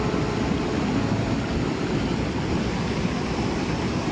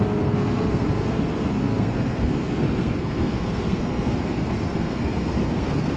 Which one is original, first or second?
first